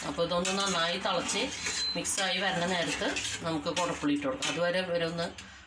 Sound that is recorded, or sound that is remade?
recorded